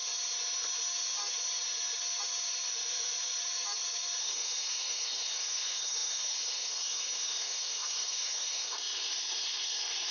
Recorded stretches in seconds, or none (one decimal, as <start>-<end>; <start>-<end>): 0.0-4.2